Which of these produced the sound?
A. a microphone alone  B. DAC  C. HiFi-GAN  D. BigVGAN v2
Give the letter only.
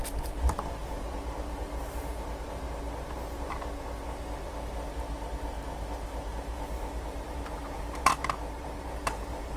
D